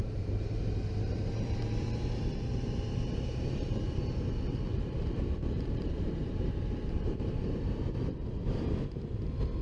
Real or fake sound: fake